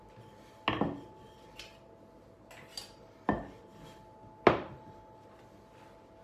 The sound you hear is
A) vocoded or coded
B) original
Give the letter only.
B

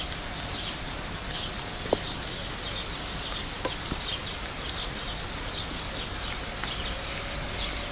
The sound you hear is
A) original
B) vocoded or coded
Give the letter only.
A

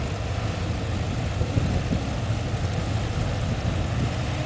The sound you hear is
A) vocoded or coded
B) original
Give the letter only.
B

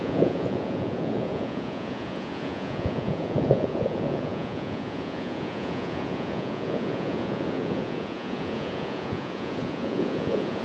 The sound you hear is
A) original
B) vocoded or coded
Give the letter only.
B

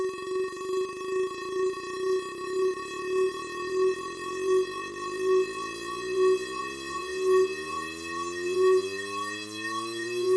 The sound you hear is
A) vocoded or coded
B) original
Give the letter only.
A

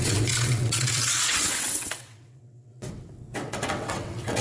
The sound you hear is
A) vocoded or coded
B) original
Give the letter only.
A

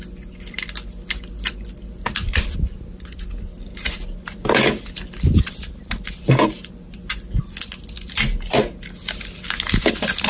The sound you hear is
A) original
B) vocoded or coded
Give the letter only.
A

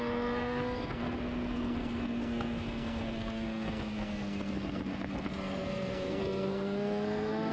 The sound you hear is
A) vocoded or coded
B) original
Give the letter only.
A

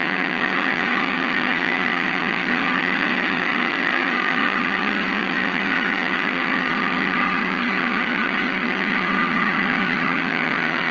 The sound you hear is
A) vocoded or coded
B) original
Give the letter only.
A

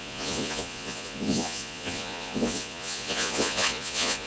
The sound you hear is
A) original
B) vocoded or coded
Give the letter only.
B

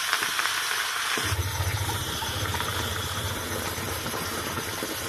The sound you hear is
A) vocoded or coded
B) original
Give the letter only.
A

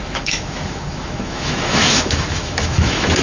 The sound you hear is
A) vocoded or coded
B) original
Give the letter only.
A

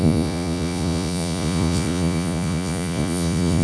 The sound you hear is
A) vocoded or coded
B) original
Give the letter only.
A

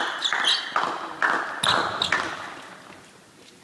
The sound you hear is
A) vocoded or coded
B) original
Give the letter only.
B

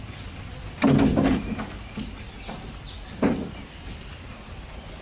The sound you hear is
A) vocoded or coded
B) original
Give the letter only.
B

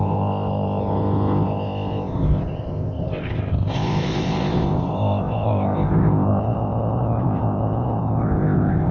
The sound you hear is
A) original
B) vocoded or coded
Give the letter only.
B